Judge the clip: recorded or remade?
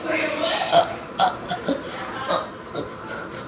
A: remade